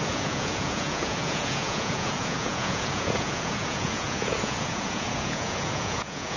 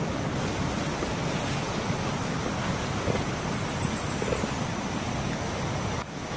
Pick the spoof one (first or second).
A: first